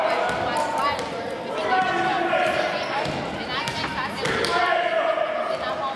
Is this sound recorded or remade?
recorded